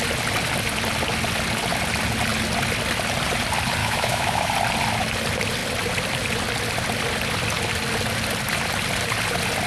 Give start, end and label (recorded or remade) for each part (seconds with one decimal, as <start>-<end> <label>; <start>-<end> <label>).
0.0-3.8 recorded; 3.8-4.5 remade; 4.5-9.7 recorded